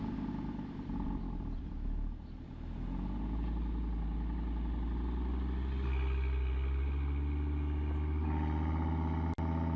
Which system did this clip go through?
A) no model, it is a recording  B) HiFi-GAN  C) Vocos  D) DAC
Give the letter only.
A